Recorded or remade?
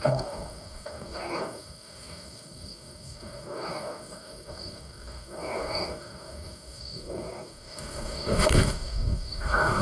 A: remade